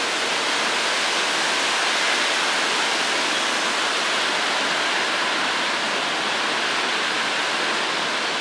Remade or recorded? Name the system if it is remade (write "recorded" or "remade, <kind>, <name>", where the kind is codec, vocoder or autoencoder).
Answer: recorded